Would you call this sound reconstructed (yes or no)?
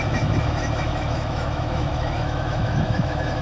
yes